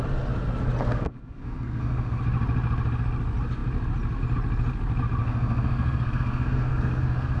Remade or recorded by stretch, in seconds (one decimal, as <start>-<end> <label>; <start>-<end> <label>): 0.0-0.8 recorded; 0.8-2.2 remade; 2.2-5.2 recorded; 5.2-7.4 remade

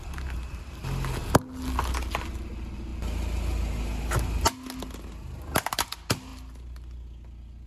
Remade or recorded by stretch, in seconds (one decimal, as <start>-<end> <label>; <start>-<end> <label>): 0.0-7.7 recorded

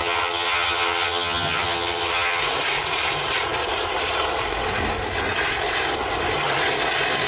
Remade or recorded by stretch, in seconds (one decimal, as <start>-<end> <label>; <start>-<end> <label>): 0.0-2.4 remade; 2.4-7.3 recorded

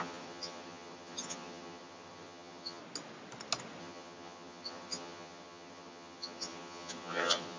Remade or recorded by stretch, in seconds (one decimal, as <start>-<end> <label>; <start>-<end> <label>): 0.0-2.8 remade; 2.8-3.8 recorded; 3.8-7.6 remade

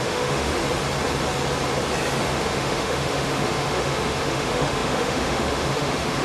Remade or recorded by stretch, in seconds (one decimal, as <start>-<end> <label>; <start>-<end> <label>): 0.0-0.6 remade; 0.6-2.2 recorded; 2.2-6.2 remade

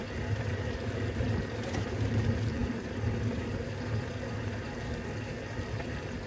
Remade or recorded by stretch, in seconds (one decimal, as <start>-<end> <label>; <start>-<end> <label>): 0.0-6.3 remade